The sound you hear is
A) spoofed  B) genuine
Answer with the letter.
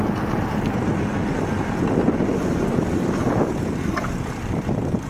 B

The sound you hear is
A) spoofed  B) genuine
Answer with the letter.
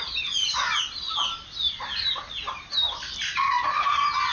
B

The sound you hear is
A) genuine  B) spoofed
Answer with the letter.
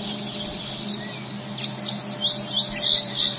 A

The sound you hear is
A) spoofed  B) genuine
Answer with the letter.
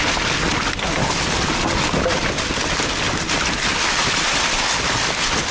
B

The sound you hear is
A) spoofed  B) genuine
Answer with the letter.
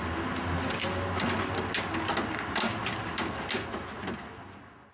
B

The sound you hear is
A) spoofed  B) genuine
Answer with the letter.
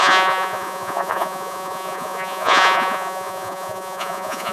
A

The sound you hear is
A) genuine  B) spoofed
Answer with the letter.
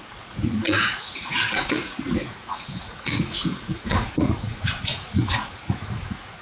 B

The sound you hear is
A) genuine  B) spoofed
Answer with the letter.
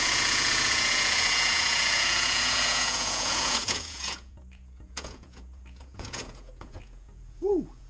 B